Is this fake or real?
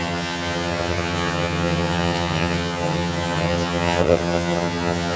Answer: fake